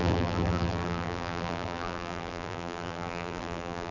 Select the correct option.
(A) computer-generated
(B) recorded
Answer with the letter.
A